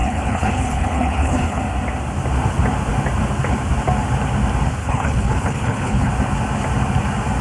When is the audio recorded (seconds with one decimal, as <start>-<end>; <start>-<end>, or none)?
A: 1.6-4.8; 6.1-7.4